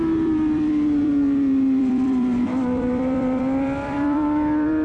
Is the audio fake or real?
fake